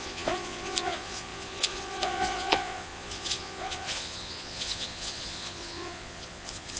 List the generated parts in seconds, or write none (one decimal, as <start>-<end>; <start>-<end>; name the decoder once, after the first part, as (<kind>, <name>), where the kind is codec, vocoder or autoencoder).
0.0-6.8 (vocoder, Vocos)